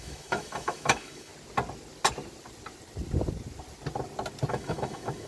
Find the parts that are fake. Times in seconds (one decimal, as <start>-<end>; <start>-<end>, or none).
0.0-1.3; 4.5-5.3